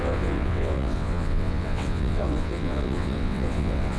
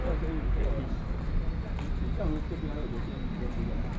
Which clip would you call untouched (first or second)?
second